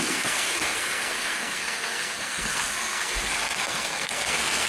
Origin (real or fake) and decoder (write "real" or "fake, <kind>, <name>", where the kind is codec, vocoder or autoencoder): fake, codec, SNAC